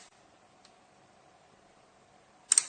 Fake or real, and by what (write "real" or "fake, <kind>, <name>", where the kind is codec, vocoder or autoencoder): real